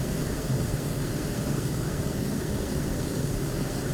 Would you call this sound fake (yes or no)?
yes